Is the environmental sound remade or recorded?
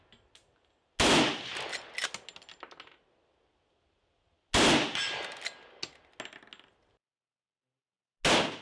recorded